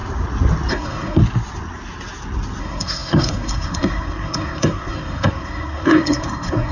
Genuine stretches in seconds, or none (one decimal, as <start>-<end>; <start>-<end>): 0.0-0.7; 1.2-2.6